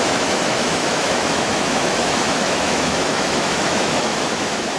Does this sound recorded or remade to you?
remade